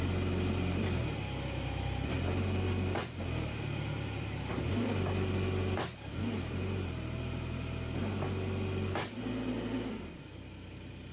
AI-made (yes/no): no